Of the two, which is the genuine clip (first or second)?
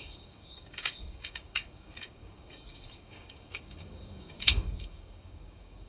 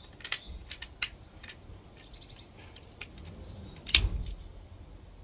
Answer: second